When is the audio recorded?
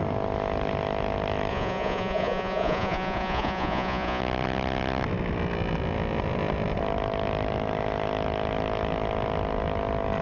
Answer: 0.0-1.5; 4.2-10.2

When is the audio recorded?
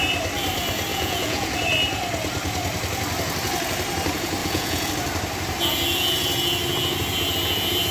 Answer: 0.0-0.9; 1.6-4.4; 4.9-7.9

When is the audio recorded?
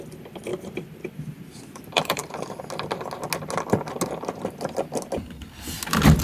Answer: 0.5-1.7; 2.2-6.2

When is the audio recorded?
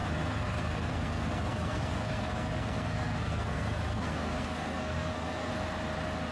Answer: 5.5-6.3